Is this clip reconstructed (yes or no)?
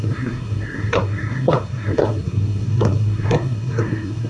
yes